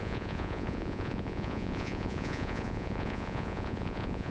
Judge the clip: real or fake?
fake